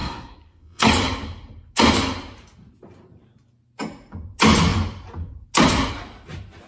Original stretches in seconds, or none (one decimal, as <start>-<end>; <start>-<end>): 0.9-6.7